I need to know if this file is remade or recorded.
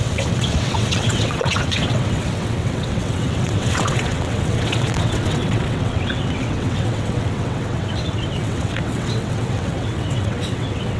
remade